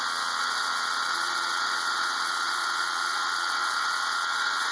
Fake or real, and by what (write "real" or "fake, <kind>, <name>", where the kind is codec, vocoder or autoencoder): fake, vocoder, WaveNeXt